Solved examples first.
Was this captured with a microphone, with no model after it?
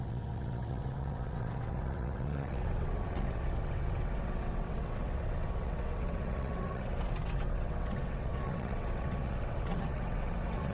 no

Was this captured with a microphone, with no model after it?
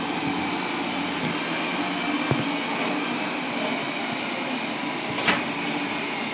yes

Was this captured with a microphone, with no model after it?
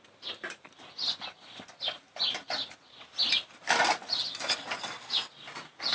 yes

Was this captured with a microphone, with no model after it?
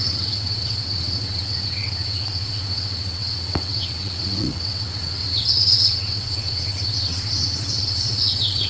no